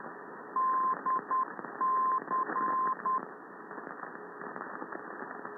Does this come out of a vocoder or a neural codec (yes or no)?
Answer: no